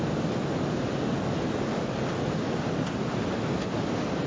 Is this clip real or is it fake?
real